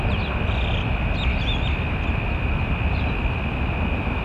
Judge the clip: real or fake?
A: real